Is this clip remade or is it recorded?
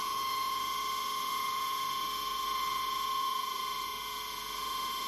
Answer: remade